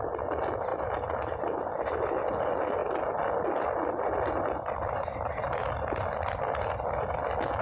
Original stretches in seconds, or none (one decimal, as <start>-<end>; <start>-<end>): 0.0-7.6